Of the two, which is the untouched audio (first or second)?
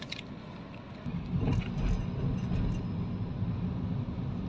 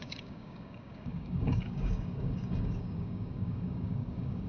first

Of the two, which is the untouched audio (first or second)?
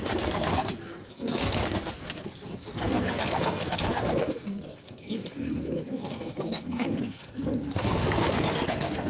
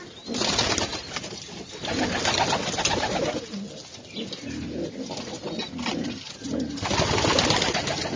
second